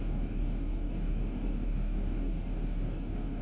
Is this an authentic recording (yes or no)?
no